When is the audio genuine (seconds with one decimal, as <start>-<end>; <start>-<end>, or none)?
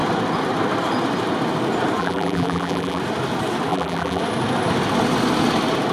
0.0-2.0; 3.0-3.7; 4.2-5.9